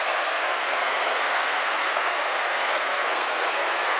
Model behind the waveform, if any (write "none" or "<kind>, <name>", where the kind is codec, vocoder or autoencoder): codec, SNAC